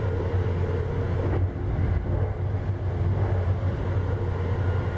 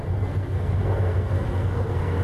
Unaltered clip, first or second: first